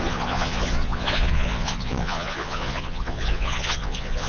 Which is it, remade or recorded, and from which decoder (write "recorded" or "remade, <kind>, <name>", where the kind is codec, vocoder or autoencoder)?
remade, vocoder, Vocos